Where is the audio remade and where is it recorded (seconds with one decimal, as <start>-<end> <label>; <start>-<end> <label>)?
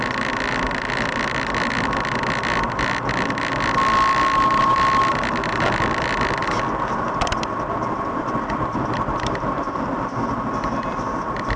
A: 0.0-11.6 recorded